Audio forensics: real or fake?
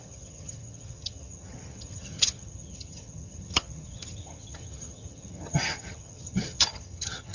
fake